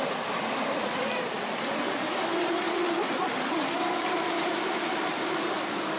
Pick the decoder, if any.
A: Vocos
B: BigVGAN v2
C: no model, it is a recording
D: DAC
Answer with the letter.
C